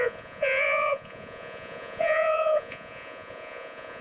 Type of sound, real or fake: fake